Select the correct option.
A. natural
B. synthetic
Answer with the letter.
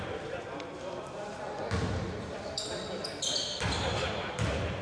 B